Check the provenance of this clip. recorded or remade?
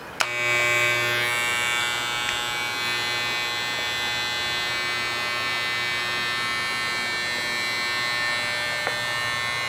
recorded